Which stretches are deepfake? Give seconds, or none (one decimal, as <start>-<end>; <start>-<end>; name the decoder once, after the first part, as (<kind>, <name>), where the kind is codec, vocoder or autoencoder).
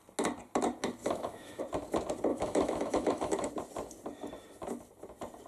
1.0-1.6 (autoencoder, DAC-VAE); 2.3-3.5